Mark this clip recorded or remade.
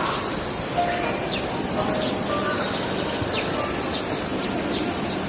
remade